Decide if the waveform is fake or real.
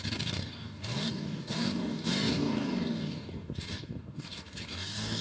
fake